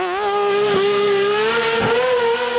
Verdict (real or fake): real